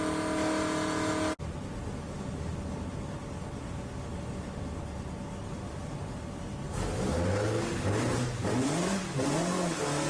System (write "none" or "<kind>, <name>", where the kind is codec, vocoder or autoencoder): none